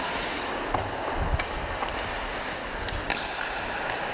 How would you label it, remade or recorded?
recorded